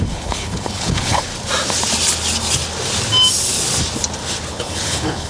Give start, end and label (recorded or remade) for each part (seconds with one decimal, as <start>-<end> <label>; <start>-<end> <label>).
0.0-1.3 remade; 1.3-4.5 recorded; 4.5-5.3 remade